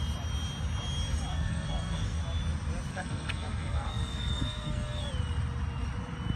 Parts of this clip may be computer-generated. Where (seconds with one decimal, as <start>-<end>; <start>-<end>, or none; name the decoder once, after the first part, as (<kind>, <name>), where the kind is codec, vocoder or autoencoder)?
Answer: 1.3-2.2 (codec, SNAC); 2.9-5.1